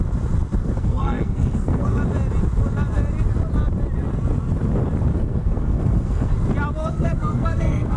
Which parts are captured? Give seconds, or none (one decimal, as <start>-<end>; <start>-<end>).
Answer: 0.0-0.6; 2.0-5.1; 6.3-6.8